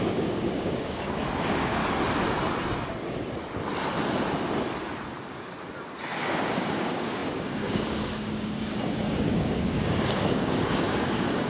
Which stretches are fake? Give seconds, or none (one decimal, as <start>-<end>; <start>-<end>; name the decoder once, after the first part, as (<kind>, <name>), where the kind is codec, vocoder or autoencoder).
0.0-1.8 (codec, DAC); 6.2-11.5